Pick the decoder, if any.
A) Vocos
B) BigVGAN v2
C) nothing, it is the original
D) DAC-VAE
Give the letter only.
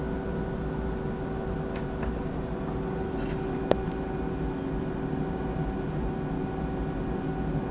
C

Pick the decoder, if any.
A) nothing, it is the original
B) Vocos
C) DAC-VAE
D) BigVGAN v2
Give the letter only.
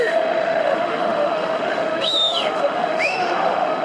C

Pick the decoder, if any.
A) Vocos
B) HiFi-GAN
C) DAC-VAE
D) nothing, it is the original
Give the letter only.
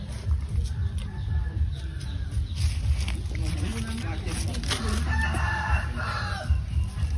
D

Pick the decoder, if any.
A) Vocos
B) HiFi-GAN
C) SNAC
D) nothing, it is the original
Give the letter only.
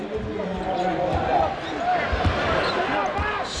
D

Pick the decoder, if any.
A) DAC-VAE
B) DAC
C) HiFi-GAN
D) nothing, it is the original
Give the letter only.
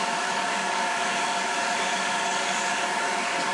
B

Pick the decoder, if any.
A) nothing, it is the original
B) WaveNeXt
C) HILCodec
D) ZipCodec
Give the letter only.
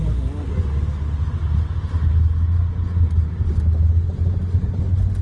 A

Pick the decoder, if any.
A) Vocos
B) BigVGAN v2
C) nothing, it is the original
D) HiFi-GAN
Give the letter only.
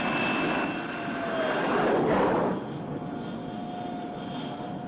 C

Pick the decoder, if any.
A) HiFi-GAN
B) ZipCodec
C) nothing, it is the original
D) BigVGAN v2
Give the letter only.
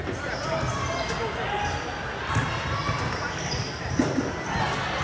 C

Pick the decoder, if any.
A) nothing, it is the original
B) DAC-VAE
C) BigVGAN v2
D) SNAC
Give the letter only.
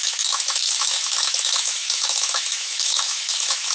B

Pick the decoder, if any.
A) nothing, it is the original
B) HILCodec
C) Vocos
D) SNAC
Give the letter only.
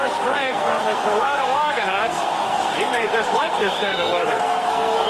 D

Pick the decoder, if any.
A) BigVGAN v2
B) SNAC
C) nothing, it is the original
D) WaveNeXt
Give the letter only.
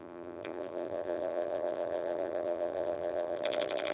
A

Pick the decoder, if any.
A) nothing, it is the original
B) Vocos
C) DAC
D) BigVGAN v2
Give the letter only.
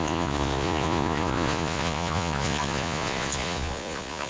B